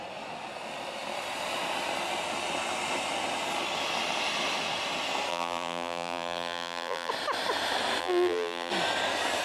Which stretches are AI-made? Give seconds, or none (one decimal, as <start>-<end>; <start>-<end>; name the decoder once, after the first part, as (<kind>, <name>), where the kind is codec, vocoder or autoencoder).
5.3-7.1 (vocoder, BigVGAN v2); 8.0-8.7